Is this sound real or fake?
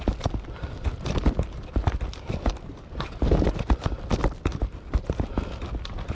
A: real